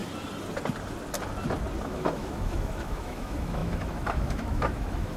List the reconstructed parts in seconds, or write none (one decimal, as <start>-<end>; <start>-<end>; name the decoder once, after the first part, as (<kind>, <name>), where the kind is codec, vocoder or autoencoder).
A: 1.8-5.2 (autoencoder, DAC-VAE)